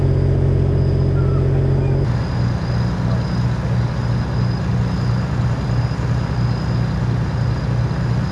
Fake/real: real